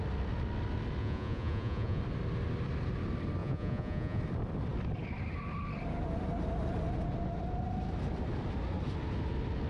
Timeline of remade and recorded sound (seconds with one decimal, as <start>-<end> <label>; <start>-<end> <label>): 0.0-1.0 recorded; 1.0-2.0 remade; 2.0-3.4 recorded; 3.4-4.2 remade; 4.2-9.7 recorded